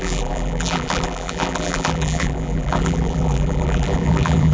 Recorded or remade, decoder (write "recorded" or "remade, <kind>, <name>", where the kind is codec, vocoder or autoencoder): remade, vocoder, BigVGAN v2